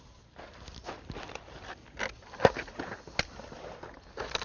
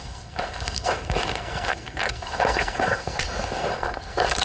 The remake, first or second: second